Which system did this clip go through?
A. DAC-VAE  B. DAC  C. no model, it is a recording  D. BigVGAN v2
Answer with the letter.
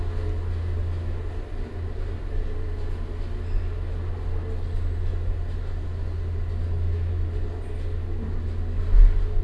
C